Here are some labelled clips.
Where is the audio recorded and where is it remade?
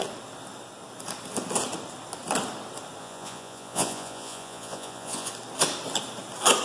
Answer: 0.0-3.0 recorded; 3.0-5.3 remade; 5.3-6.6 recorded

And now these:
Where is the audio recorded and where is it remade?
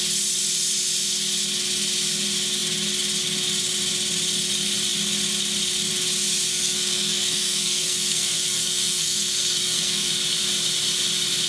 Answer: 0.0-6.5 recorded; 6.5-10.1 remade; 10.1-11.5 recorded